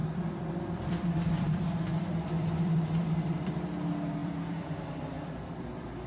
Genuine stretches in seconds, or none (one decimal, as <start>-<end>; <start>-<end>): 3.7-4.2